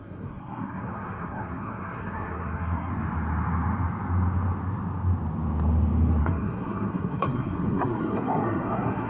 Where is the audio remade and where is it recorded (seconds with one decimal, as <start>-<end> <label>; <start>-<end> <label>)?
0.0-2.9 remade; 2.9-6.2 recorded; 6.2-9.1 remade